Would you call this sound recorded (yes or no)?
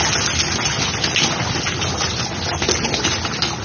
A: yes